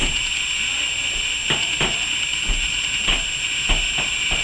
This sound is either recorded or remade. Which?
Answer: recorded